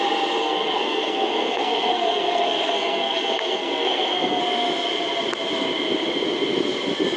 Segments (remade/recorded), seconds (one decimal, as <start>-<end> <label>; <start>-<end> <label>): 0.0-0.4 recorded; 0.4-4.4 remade; 4.4-7.2 recorded